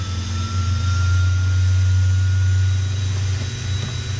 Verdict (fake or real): real